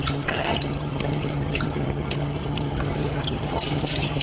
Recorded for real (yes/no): no